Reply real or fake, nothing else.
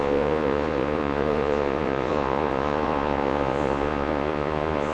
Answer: fake